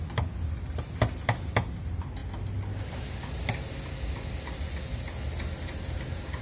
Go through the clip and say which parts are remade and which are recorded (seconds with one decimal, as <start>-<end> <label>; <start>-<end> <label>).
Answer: 0.0-6.4 recorded